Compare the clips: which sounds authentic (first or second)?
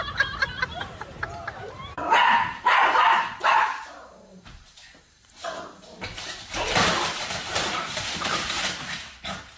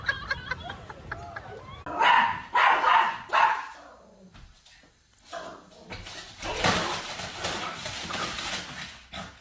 second